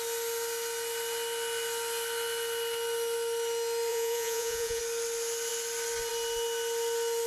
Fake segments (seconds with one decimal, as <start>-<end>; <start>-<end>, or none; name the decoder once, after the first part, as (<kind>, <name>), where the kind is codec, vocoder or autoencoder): 3.9-4.8 (vocoder, Vocos)